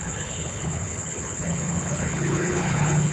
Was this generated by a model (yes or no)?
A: yes